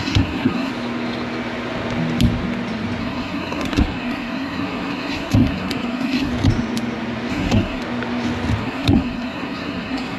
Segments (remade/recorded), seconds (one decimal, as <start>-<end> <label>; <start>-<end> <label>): 0.0-0.7 remade; 0.7-3.0 recorded; 3.0-6.3 remade; 6.3-7.3 recorded; 7.3-7.8 remade; 7.8-8.6 recorded; 8.6-10.2 remade

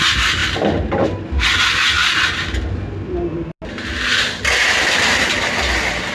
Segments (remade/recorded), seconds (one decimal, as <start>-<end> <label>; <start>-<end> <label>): 0.0-6.1 recorded

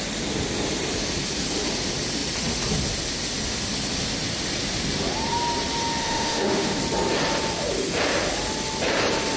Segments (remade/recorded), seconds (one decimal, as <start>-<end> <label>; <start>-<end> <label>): 0.0-6.0 recorded; 6.0-6.8 remade; 6.8-9.4 recorded

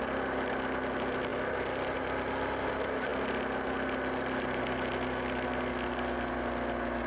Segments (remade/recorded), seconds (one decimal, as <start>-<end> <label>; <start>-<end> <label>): 0.0-7.1 recorded

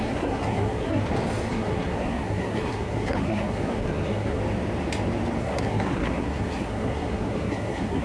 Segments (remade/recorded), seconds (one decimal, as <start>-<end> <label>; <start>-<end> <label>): 0.0-1.0 remade; 1.0-1.5 recorded; 1.5-4.4 remade; 4.4-5.4 recorded; 5.4-8.0 remade

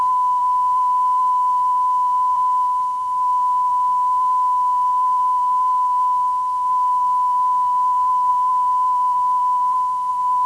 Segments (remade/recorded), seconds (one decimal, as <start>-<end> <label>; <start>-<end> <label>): 0.0-10.5 remade

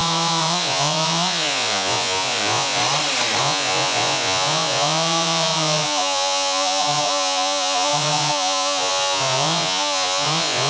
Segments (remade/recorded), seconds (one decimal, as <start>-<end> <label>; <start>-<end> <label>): 0.0-2.8 remade; 2.8-3.4 recorded; 3.4-10.7 remade

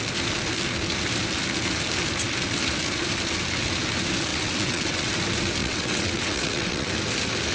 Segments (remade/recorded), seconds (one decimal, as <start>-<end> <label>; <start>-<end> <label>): 0.0-4.3 recorded; 4.3-5.1 remade; 5.1-5.6 recorded; 5.6-6.9 remade; 6.9-7.5 recorded